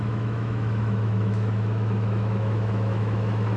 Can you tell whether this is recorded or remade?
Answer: remade